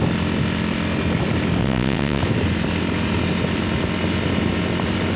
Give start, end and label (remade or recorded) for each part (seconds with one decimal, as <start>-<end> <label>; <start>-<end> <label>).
0.0-1.6 recorded; 1.6-2.2 remade; 2.2-5.2 recorded